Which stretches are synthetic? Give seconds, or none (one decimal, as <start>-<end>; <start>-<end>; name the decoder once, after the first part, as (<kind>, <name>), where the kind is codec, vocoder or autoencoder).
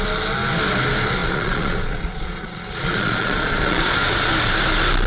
1.2-4.3 (vocoder, Vocos)